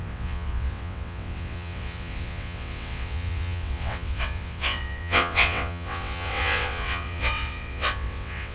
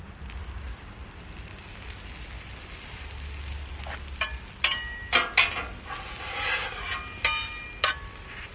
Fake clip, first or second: first